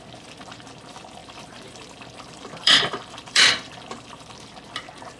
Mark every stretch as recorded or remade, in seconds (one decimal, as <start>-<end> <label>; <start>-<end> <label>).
0.0-1.2 recorded; 1.2-4.3 remade; 4.3-5.2 recorded